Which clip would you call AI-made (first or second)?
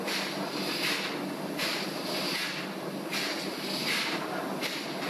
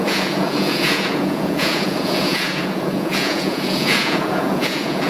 second